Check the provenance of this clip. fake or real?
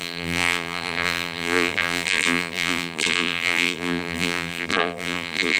fake